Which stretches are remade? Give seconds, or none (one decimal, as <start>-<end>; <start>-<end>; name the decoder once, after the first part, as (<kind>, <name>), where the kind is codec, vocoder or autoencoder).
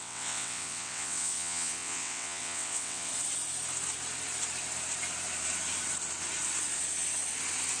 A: 0.0-3.1 (vocoder, WaveNeXt)